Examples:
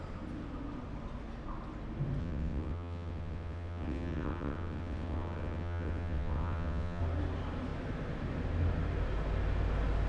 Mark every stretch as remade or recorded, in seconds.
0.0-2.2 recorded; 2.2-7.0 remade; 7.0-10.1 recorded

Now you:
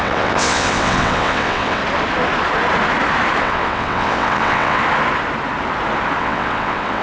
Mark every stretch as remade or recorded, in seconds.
0.0-1.8 remade; 1.8-3.4 recorded; 3.4-4.8 remade; 4.8-6.2 recorded; 6.2-7.0 remade